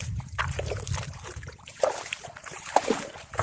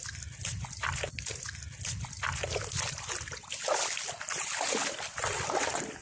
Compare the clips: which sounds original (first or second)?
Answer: second